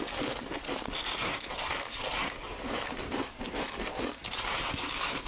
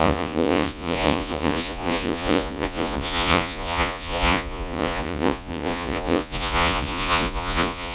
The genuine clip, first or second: first